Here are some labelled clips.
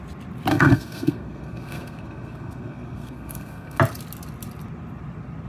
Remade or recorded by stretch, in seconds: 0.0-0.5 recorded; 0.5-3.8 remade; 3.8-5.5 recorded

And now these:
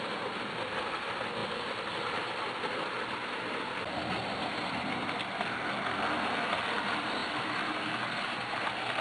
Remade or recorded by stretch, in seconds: 0.0-9.0 recorded

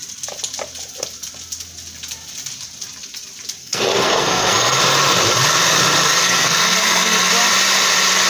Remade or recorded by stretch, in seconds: 0.0-3.6 recorded; 3.6-4.8 remade; 4.8-6.2 recorded; 6.2-7.3 remade; 7.3-8.3 recorded

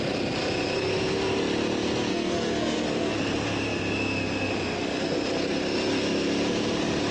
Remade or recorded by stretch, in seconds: 0.0-2.1 recorded; 2.1-3.2 remade; 3.2-7.1 recorded

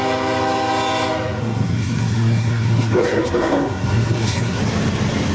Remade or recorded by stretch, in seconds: 0.0-1.4 recorded; 1.4-4.6 remade; 4.6-5.3 recorded